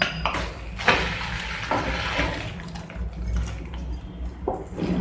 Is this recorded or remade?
recorded